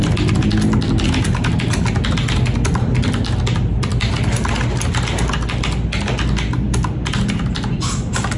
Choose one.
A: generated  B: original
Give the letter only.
B